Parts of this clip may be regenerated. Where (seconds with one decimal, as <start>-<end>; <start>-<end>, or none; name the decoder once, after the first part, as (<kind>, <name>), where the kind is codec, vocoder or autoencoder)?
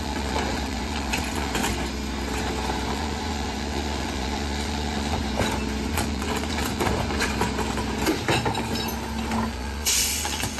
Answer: 0.0-1.6 (vocoder, Vocos); 2.9-5.2; 5.9-7.3; 9.5-10.6